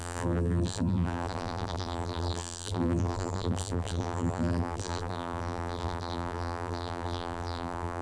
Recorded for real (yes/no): no